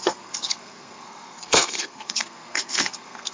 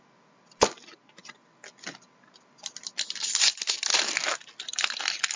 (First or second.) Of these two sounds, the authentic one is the second